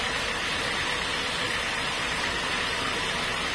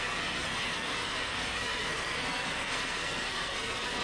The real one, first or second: first